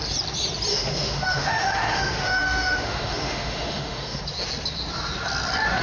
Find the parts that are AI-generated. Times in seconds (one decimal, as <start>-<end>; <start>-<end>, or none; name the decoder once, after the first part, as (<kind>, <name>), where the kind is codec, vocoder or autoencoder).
0.7-4.2 (autoencoder, DAC-VAE)